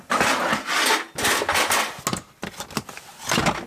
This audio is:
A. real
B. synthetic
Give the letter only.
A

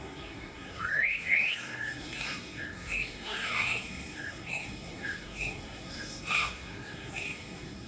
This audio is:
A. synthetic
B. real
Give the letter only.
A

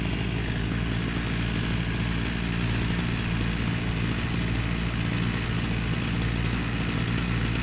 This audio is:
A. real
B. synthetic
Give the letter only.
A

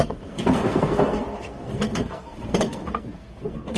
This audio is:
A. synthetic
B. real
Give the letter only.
A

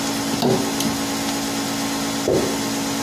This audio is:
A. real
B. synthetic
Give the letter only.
A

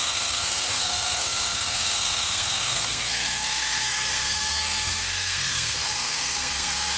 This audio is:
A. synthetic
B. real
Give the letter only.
A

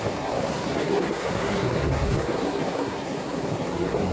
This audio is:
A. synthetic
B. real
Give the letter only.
A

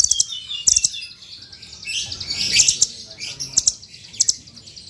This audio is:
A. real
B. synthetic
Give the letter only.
A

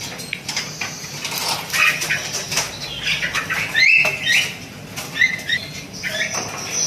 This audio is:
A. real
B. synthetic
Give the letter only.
A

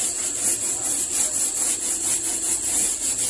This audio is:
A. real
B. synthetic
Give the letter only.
A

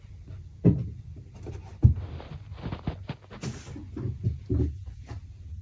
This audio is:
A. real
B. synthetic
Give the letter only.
A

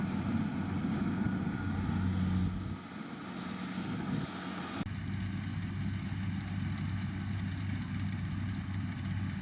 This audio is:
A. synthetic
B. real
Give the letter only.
B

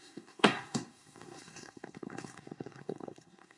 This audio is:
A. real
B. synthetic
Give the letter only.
B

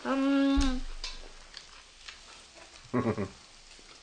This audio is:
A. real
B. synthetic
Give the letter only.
A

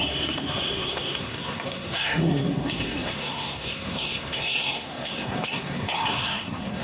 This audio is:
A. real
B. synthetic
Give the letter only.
B